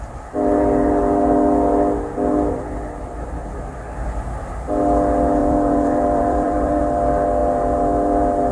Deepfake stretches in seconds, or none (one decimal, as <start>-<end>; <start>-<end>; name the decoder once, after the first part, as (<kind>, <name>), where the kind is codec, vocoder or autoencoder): 5.4-6.8 (vocoder, BigVGAN v2)